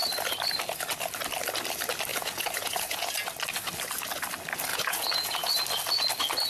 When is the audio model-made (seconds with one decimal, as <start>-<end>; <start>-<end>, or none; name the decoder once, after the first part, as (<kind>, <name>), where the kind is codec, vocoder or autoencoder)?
2.1-3.1 (vocoder, Vocos); 4.7-5.5